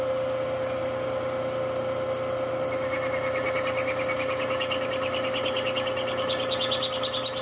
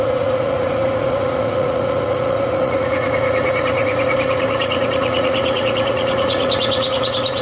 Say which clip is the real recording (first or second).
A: first